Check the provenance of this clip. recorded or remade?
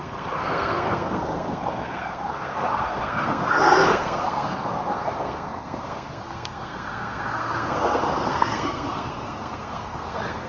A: remade